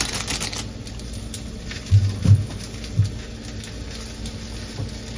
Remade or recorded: recorded